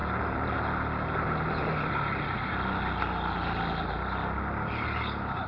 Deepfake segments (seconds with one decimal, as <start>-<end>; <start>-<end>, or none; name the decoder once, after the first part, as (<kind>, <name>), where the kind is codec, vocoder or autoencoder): none